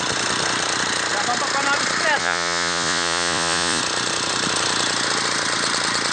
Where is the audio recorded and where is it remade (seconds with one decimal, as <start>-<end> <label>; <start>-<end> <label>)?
0.0-2.2 recorded; 2.2-3.8 remade; 3.8-6.1 recorded